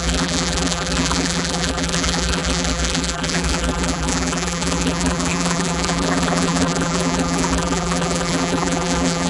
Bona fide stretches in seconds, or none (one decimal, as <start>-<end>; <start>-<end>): none